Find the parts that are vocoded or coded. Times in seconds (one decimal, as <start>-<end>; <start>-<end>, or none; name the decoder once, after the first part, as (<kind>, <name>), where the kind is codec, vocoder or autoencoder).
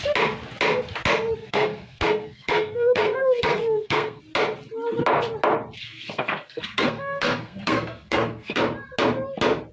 1.4-4.2 (codec, SNAC); 5.8-8.6